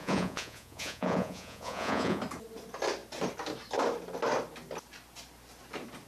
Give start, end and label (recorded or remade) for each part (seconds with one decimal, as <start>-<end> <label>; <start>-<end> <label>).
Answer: 0.0-2.2 remade; 2.2-6.1 recorded